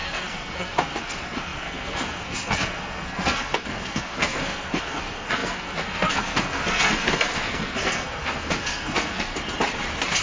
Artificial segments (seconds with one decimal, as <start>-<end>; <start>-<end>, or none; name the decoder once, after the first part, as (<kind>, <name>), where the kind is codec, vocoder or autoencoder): 0.0-9.3 (codec, SNAC)